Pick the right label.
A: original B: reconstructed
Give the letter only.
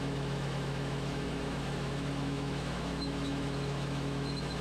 B